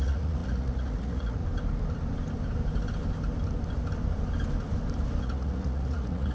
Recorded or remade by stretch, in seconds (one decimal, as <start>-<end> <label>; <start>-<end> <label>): 0.0-1.4 remade; 1.4-5.2 recorded; 5.2-6.3 remade